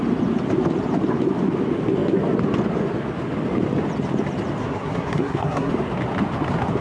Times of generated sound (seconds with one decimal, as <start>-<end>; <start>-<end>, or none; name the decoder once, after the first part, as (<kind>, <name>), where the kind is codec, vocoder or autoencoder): 4.6-5.7 (codec, SNAC)